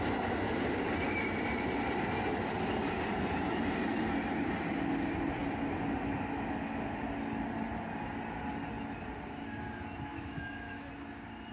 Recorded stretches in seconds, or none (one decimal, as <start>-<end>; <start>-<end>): 0.0-10.1; 10.9-11.5